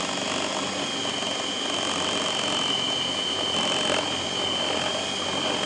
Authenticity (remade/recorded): recorded